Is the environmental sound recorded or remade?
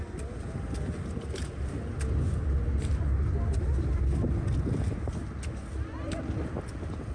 recorded